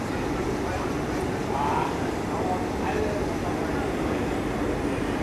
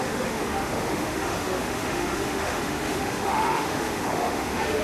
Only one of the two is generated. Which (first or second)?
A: second